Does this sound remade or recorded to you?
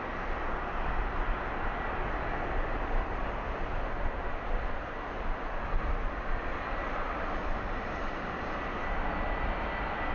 recorded